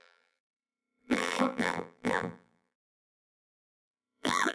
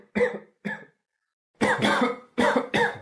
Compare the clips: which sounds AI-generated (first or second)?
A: first